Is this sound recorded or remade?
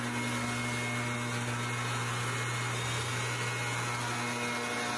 recorded